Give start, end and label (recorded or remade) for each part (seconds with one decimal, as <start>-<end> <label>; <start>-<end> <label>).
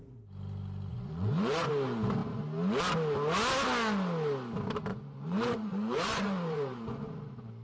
0.0-0.9 recorded; 0.9-1.7 remade; 1.7-4.9 recorded; 4.9-7.1 remade; 7.1-7.6 recorded